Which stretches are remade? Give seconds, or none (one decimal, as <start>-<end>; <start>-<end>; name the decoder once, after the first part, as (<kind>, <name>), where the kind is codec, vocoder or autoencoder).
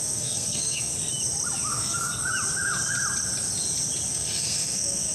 0.0-0.9 (codec, SNAC); 1.7-2.2; 4.1-5.1